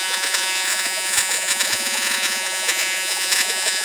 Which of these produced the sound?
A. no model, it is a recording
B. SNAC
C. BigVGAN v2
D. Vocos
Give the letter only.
D